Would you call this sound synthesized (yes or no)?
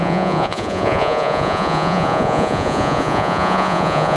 yes